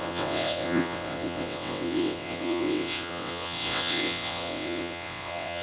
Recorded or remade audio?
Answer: remade